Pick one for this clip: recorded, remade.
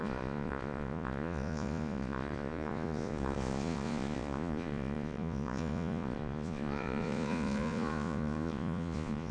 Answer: remade